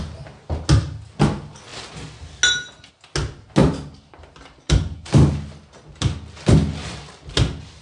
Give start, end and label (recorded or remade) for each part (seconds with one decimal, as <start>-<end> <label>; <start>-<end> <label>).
0.0-3.6 recorded; 3.6-5.1 remade; 5.1-7.8 recorded